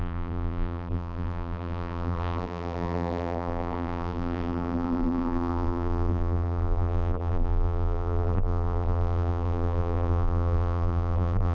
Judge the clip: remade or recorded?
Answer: remade